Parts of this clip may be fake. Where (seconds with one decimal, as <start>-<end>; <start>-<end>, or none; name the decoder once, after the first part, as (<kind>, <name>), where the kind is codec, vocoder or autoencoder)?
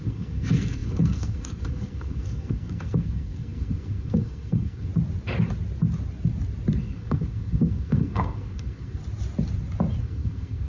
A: 0.0-4.9 (codec, SNAC); 6.8-9.0; 10.0-10.7